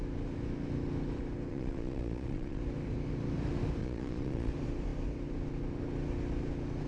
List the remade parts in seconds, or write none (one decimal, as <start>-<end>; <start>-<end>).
1.5-2.6; 3.8-4.5